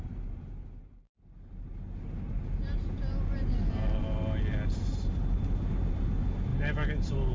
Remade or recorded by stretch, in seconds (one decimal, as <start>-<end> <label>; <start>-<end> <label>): 0.0-7.3 recorded